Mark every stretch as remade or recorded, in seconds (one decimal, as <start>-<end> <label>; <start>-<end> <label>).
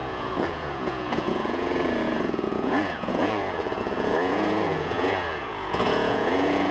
0.0-6.7 remade